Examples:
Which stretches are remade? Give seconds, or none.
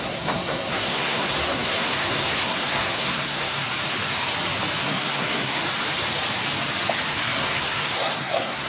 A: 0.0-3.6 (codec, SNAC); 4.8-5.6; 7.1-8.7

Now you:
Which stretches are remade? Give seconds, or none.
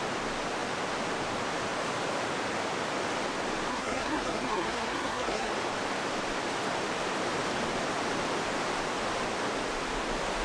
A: 3.7-5.5 (codec, SNAC)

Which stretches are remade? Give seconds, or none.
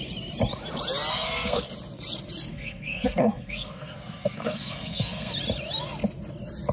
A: 1.1-1.7 (codec, SNAC); 2.5-5.3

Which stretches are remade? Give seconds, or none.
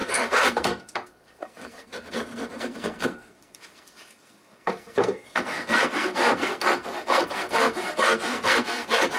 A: 0.0-9.2 (codec, SNAC)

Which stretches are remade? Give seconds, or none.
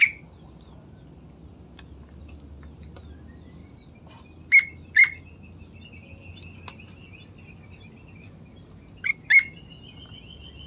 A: none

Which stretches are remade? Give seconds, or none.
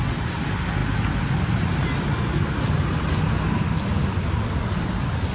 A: none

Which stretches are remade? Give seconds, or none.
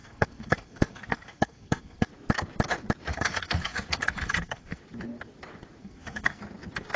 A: 0.0-2.1 (codec, SNAC); 3.1-4.8; 5.8-6.4